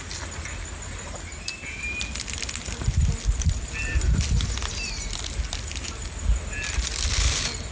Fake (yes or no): no